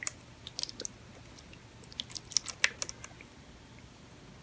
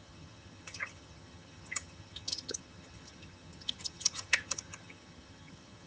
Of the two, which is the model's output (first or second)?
second